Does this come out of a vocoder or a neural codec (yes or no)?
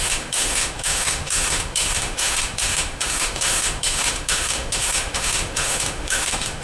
yes